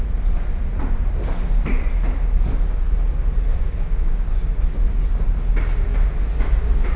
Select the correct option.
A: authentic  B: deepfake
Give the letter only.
A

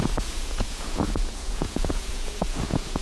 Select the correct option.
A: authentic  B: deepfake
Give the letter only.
B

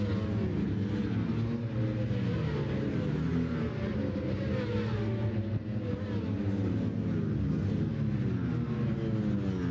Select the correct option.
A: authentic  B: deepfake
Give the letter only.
A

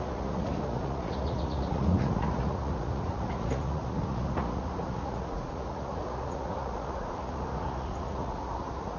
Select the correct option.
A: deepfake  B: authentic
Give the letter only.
A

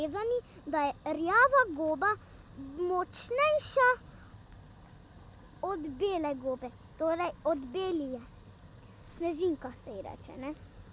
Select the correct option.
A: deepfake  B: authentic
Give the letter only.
B